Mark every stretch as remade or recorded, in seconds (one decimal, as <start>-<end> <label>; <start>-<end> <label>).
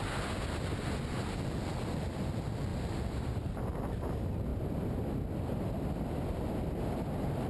0.0-2.7 recorded; 2.7-3.5 remade; 3.5-7.5 recorded